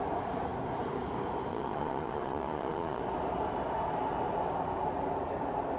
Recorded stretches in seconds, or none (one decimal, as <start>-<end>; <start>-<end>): 0.0-1.5; 3.0-5.8